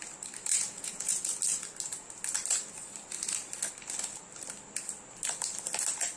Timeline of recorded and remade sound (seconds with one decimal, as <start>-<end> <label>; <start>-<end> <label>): 0.0-0.5 recorded; 0.5-1.3 remade; 1.3-6.2 recorded